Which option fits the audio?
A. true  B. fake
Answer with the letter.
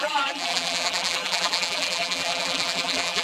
B